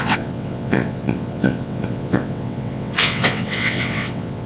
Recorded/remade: remade